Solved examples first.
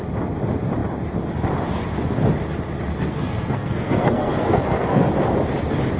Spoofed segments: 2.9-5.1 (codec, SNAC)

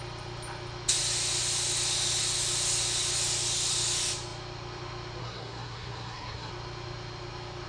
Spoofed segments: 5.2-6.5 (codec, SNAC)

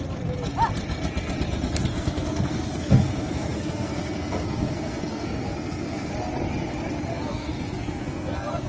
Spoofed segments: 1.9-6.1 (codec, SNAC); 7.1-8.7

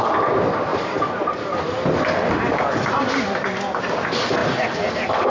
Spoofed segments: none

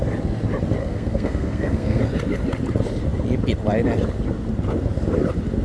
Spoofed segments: 0.8-2.0 (codec, SNAC)

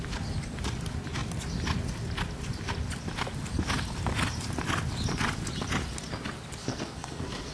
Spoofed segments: 6.6-7.5 (codec, SNAC)

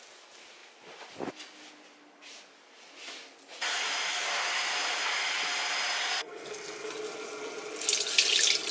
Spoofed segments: 6.2-6.9 (codec, SNAC)

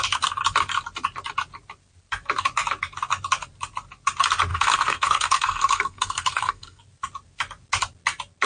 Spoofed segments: 4.5-6.8 (codec, SNAC)